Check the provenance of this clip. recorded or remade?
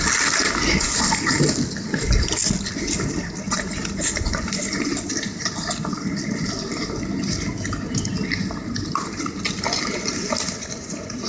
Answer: recorded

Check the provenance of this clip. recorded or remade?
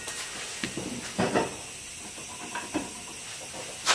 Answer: recorded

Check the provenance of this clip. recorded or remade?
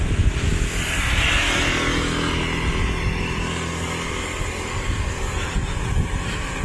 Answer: recorded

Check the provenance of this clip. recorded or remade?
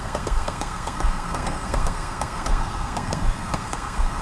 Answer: remade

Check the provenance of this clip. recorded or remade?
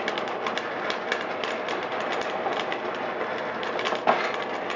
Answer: recorded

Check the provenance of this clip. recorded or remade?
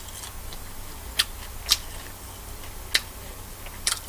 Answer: recorded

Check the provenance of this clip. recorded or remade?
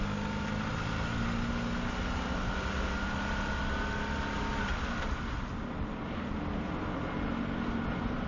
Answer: recorded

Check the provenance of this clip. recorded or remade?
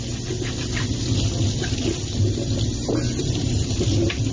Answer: recorded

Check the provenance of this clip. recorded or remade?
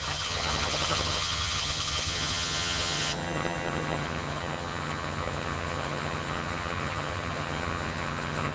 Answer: remade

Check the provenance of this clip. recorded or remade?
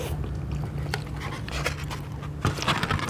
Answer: recorded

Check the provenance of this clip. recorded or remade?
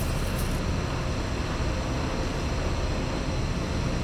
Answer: recorded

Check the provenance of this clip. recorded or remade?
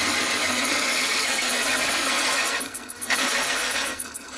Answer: remade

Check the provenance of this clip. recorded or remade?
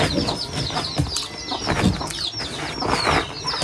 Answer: recorded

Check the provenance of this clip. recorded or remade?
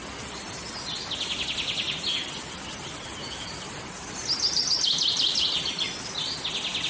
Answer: recorded